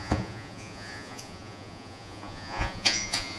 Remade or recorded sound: remade